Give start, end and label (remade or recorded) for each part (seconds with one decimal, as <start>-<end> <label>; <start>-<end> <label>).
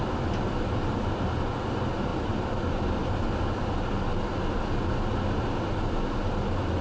0.0-6.8 recorded